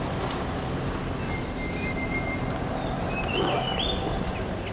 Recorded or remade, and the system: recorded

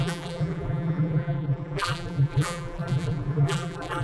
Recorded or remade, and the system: remade, vocoder, BigVGAN v2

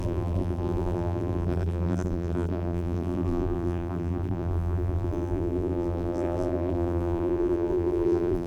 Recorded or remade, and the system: remade, vocoder, BigVGAN v2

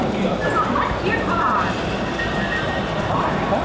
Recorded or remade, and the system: remade, vocoder, BigVGAN v2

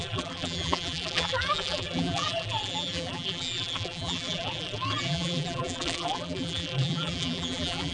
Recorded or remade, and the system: remade, vocoder, BigVGAN v2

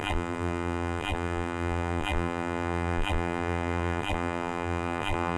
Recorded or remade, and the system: remade, vocoder, BigVGAN v2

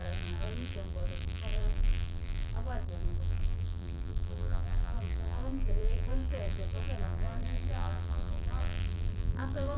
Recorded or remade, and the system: remade, vocoder, BigVGAN v2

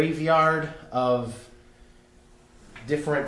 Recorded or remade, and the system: recorded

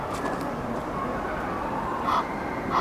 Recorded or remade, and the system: recorded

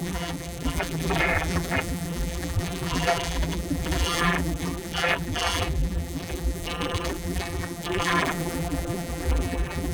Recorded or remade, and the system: remade, vocoder, BigVGAN v2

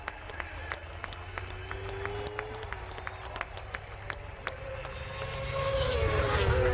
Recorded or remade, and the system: recorded